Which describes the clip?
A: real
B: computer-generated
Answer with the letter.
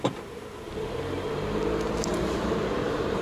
B